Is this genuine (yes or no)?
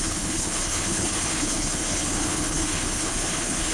no